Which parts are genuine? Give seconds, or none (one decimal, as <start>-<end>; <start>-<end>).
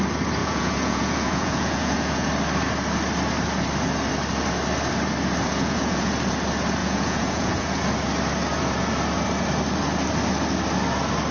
0.0-0.4; 2.3-5.5; 6.1-6.8; 7.8-11.3